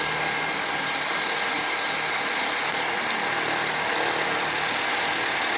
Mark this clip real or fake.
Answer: real